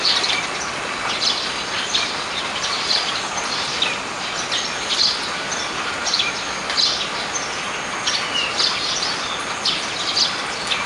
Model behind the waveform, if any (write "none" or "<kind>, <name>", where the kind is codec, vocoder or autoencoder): none